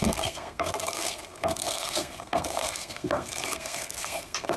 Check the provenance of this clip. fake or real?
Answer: fake